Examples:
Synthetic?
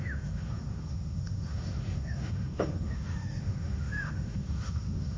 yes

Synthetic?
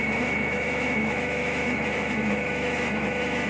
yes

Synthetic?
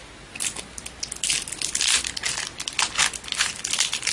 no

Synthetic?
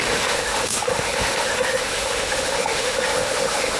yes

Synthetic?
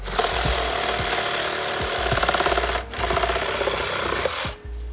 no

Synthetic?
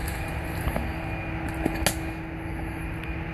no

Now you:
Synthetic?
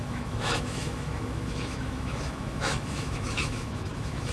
yes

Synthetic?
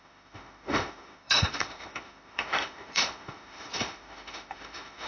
yes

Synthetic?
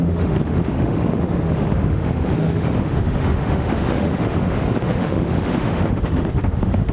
yes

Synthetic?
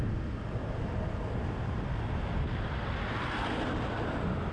no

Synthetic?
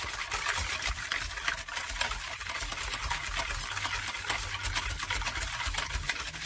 no